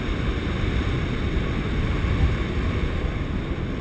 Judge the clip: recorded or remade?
recorded